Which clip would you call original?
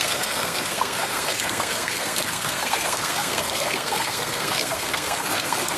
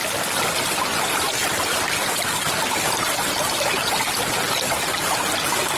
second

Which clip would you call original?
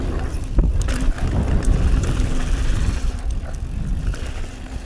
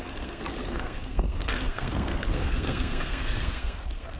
first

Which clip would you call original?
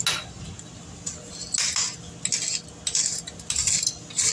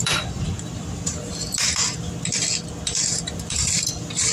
first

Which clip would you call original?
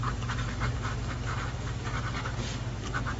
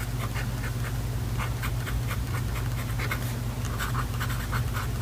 second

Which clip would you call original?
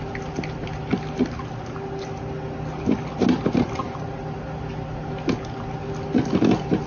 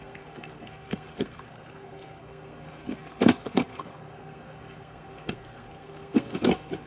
first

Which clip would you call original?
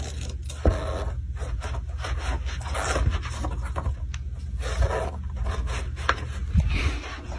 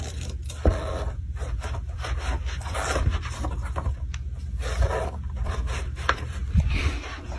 first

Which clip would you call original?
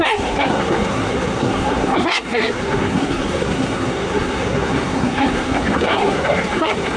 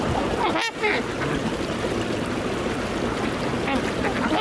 second